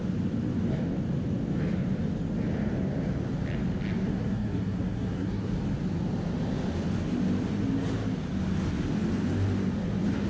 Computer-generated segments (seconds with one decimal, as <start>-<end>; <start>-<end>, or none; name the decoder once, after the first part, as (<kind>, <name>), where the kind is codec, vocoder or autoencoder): 4.1-5.5 (codec, SNAC)